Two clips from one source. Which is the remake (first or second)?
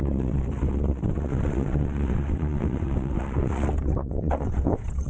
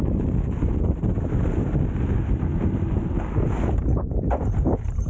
first